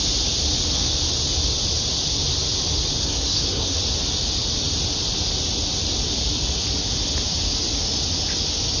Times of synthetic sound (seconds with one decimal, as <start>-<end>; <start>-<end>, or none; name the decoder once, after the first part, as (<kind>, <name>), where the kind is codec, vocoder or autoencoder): 3.0-3.8 (codec, SNAC)

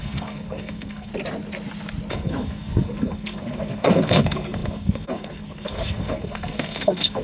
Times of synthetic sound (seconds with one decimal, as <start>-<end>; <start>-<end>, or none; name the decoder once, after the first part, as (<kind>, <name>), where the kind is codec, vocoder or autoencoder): 0.0-1.1 (codec, SNAC); 2.1-7.2

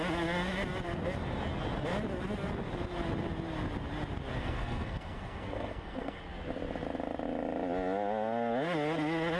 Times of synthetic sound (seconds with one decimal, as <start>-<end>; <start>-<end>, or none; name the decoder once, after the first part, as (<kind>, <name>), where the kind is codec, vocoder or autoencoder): 4.4-6.2 (codec, SNAC)